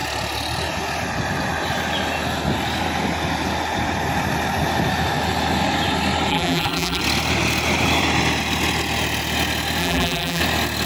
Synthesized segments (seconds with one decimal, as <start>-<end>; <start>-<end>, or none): 6.3-7.0; 9.8-10.4

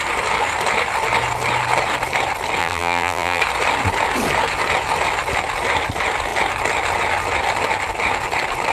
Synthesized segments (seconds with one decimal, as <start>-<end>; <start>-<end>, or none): 2.6-3.4

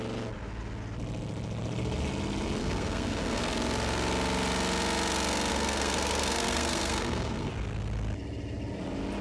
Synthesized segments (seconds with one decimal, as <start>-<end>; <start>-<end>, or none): 2.6-3.4; 5.5-7.5

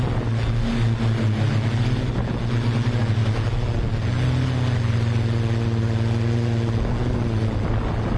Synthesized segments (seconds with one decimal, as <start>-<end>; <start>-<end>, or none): none

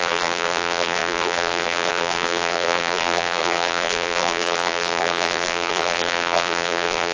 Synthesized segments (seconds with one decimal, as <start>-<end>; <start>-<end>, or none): 0.0-7.1

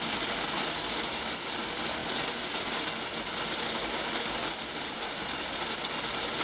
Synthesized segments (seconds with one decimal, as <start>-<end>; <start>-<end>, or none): none

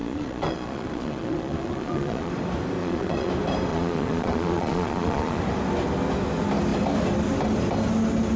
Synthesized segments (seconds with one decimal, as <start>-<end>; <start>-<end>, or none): 0.0-2.3; 2.8-3.3; 3.7-5.4